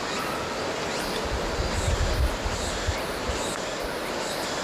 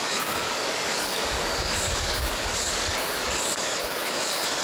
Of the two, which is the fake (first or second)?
second